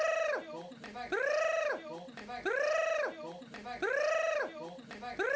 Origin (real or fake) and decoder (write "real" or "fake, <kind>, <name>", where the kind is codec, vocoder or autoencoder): real